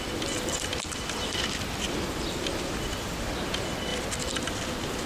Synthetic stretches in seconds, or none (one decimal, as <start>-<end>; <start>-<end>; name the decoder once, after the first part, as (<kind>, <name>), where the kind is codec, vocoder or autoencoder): none